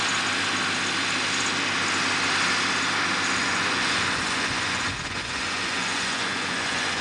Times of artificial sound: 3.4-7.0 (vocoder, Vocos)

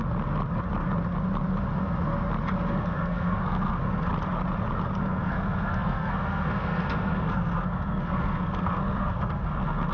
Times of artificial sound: 2.7-4.1 (codec, SNAC); 5.0-9.9